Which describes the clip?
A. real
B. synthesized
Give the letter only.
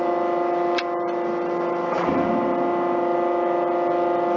A